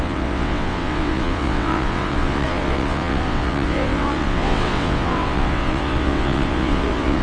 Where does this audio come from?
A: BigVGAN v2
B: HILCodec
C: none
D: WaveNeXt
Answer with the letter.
D